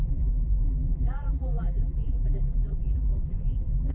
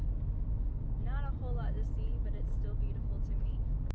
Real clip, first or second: second